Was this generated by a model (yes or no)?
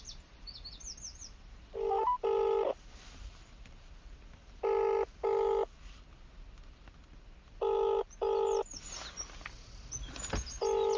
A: no